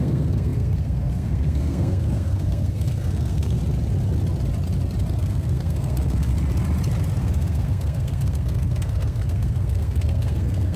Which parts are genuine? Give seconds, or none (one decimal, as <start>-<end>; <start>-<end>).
3.6-5.2; 6.3-7.2